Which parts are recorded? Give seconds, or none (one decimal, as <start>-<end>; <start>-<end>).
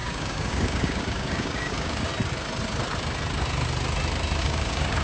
2.1-4.4